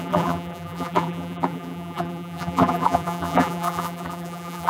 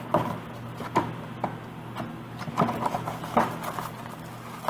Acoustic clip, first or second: second